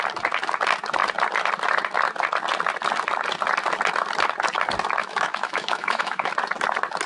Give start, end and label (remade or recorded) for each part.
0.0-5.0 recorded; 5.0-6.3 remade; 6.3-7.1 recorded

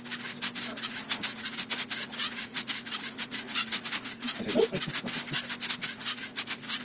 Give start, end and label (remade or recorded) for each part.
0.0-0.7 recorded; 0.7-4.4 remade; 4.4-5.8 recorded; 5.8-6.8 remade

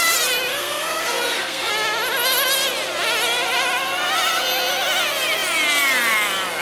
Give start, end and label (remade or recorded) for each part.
0.0-0.5 recorded; 0.5-1.7 remade; 1.7-6.6 recorded